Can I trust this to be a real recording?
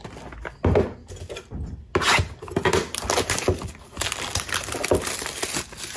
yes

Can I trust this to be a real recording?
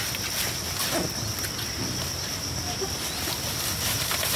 yes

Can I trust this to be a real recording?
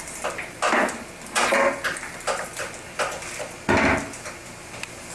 yes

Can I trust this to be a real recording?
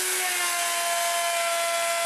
yes